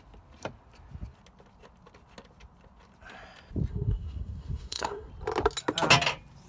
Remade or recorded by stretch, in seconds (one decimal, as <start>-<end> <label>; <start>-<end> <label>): 0.0-3.7 recorded; 3.7-5.1 remade; 5.1-6.5 recorded